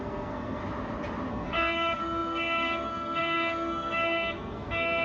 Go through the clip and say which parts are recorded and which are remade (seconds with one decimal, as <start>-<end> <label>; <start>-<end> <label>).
0.0-0.6 remade; 0.6-1.3 recorded; 1.3-5.0 remade